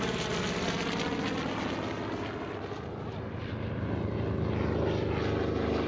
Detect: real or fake real